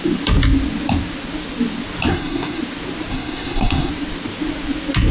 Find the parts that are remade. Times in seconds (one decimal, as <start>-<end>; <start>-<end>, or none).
2.1-2.6; 3.1-3.9